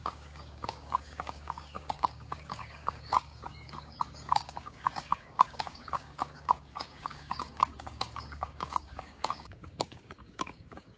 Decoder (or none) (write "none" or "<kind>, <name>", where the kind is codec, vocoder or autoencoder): codec, DAC